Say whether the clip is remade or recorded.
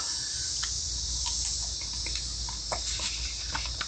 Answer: recorded